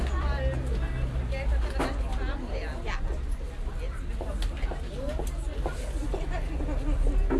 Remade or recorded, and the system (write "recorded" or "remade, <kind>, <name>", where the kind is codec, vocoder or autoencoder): recorded